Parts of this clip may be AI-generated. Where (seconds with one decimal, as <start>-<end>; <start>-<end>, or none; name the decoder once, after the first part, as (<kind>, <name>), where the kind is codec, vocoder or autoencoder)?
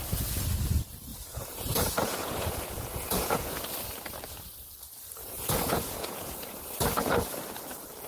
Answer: 1.1-3.6 (vocoder, Vocos); 5.2-6.6